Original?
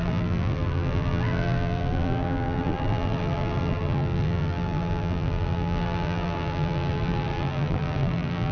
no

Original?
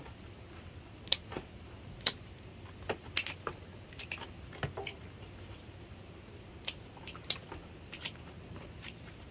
yes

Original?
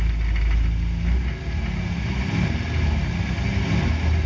yes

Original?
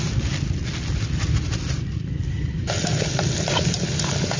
no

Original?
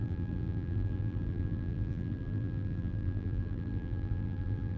no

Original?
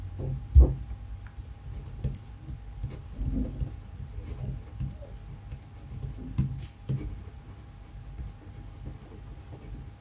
yes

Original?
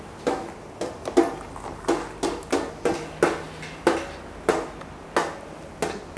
yes